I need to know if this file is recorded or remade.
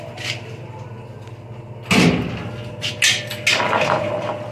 recorded